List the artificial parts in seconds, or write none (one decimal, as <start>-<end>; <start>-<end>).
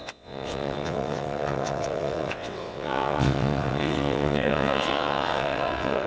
0.0-6.1